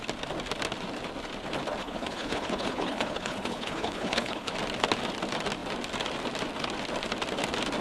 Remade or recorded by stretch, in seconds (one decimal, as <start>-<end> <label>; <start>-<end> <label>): 0.0-1.8 recorded; 1.8-4.5 remade; 4.5-7.8 recorded